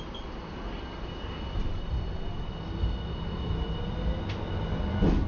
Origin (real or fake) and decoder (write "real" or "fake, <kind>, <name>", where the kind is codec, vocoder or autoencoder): real